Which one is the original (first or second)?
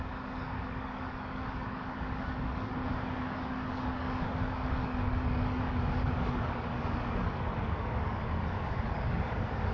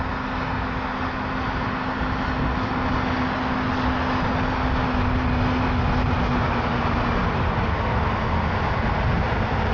second